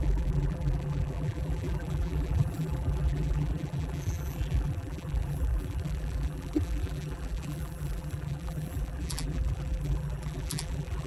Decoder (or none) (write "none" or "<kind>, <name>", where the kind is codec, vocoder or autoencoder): vocoder, BigVGAN v2